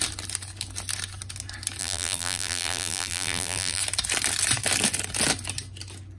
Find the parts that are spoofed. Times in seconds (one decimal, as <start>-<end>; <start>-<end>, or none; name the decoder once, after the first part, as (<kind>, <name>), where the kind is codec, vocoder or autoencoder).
1.8-3.8 (vocoder, BigVGAN v2)